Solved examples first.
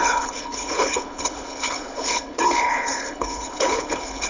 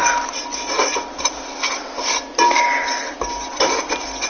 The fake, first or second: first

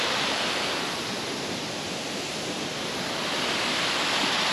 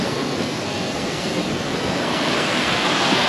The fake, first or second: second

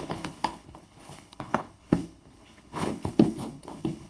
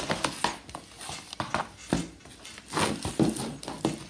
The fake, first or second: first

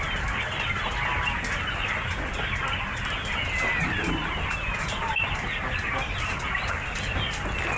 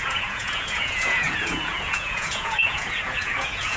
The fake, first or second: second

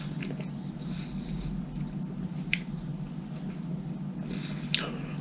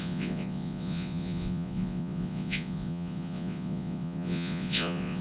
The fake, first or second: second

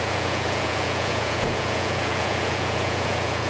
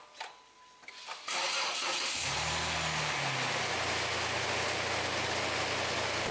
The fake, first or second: first